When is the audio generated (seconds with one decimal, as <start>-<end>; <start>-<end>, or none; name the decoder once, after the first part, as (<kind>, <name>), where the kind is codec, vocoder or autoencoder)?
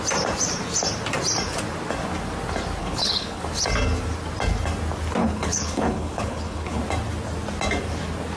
2.8-3.4 (codec, HILCodec); 5.2-6.8